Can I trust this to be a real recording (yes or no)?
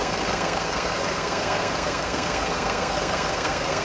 no